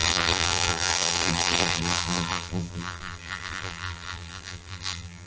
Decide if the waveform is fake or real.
fake